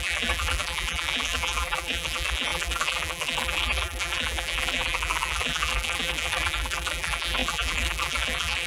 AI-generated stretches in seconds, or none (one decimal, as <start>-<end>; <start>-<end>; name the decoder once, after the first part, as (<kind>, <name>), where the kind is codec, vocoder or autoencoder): 0.0-8.7 (vocoder, BigVGAN v2)